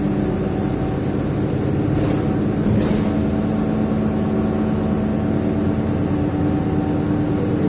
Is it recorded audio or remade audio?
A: recorded